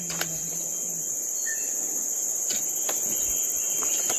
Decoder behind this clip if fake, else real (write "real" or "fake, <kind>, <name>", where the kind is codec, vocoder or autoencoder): real